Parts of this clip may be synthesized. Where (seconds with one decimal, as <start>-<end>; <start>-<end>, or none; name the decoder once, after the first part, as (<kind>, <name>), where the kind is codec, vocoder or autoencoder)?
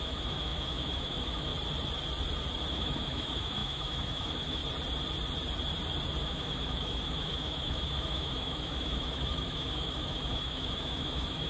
0.0-1.5 (autoencoder, DAC-VAE); 2.7-4.6; 6.2-11.5